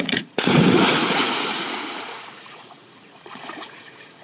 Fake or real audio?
fake